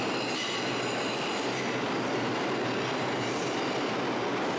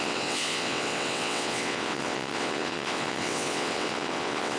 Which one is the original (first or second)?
first